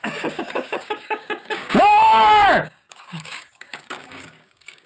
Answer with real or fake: fake